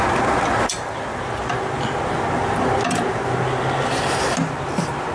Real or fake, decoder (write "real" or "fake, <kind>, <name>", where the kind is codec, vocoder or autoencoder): real